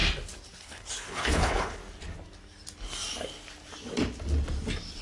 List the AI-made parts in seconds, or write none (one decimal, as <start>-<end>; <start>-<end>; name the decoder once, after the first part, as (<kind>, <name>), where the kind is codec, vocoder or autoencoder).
0.6-1.8 (codec, HILCodec)

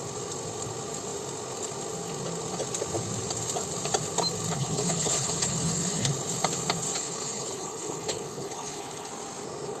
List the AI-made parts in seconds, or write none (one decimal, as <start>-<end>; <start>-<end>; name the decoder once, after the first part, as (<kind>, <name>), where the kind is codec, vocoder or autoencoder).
4.6-6.1 (codec, HILCodec); 7.0-9.1

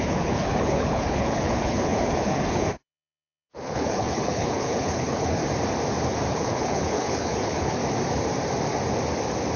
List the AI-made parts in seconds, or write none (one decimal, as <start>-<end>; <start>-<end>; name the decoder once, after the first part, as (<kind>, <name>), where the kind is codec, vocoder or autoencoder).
0.0-5.4 (codec, HILCodec); 6.3-7.8

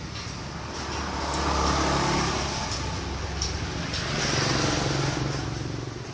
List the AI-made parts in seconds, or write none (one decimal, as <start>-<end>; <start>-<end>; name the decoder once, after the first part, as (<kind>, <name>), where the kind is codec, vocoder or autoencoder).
none

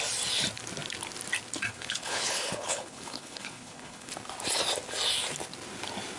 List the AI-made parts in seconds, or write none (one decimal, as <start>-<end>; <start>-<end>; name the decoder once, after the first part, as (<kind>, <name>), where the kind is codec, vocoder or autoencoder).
1.7-4.1 (codec, HILCodec)

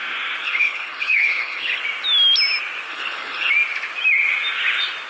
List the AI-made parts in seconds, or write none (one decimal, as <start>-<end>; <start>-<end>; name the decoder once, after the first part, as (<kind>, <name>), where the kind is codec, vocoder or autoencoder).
0.4-1.8 (codec, HILCodec); 2.9-3.5

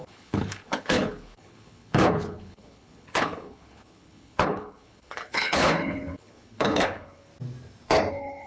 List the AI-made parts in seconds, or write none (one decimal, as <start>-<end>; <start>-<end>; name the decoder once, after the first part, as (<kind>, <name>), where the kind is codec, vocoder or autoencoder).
0.0-7.3 (codec, HILCodec); 8.1-8.5